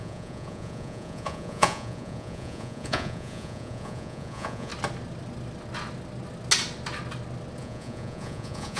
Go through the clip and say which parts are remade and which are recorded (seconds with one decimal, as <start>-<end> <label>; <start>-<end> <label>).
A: 0.0-4.7 remade; 4.7-7.6 recorded; 7.6-8.8 remade